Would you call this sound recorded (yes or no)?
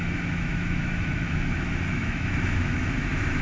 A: no